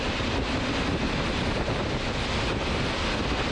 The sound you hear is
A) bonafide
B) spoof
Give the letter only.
B